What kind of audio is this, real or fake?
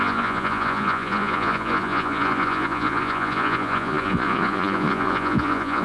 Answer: fake